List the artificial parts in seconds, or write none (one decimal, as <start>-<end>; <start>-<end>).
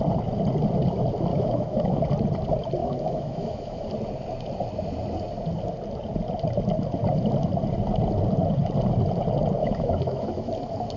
1.3-2.0; 2.8-3.9; 9.6-10.5